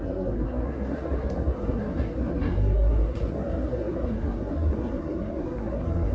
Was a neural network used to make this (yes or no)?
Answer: yes